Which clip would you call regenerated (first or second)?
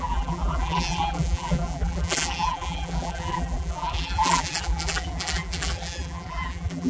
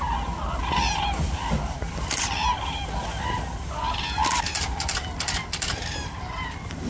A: first